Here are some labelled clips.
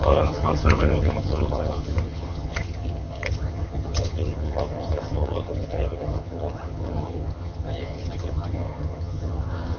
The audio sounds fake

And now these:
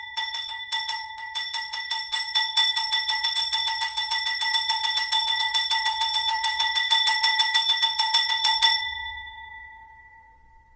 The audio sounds fake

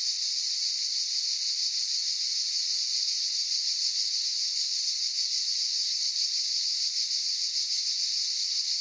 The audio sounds real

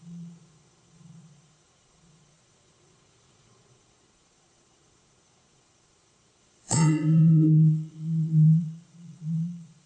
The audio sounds fake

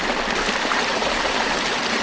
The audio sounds real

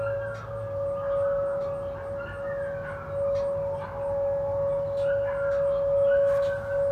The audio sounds real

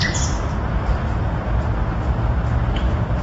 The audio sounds real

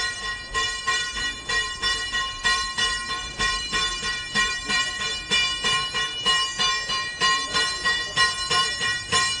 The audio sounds fake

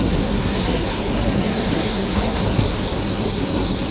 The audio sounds fake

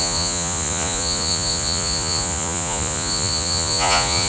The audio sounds fake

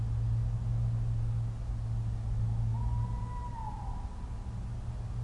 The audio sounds real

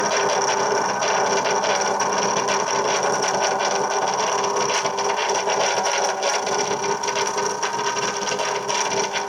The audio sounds real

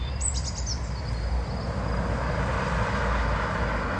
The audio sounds real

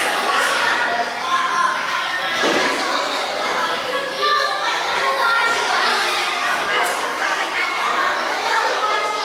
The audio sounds fake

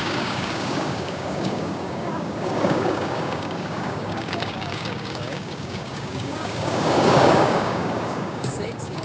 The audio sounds fake